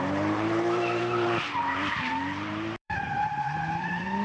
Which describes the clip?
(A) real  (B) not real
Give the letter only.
B